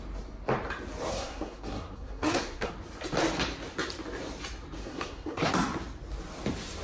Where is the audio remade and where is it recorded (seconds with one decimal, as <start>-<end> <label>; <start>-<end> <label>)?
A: 0.0-1.1 recorded; 1.1-2.7 remade; 2.7-4.8 recorded; 4.8-5.5 remade; 5.5-6.8 recorded